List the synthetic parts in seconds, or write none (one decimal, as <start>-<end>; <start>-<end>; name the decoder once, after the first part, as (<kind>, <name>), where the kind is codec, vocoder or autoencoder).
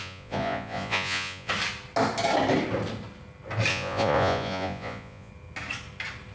0.0-1.5 (vocoder, Vocos); 3.7-5.3